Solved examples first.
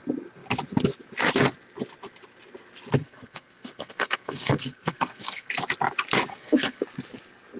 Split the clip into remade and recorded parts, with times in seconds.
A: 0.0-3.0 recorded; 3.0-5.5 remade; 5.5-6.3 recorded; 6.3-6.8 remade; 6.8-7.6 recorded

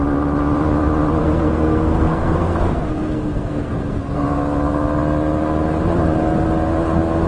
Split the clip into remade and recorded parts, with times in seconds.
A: 0.0-1.2 recorded; 1.2-4.2 remade; 4.2-7.3 recorded

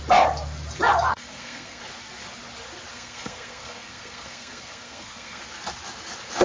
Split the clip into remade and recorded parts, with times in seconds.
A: 0.0-1.1 recorded; 1.1-1.8 remade; 1.8-2.9 recorded; 2.9-5.4 remade; 5.4-6.4 recorded

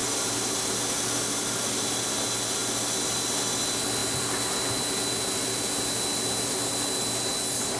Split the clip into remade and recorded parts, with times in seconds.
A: 0.0-7.8 recorded